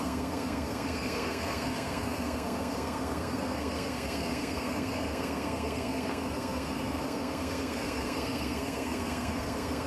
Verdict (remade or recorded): remade